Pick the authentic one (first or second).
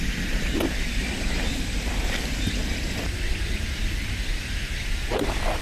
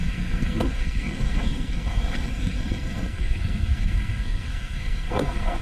first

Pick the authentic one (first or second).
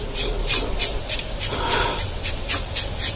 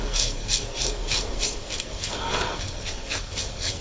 first